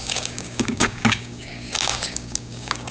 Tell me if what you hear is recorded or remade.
remade